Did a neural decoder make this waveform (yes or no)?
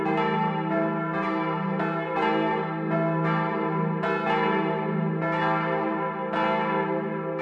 no